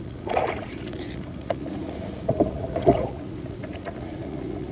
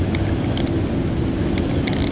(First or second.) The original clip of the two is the second